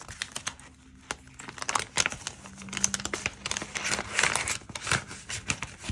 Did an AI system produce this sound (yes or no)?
no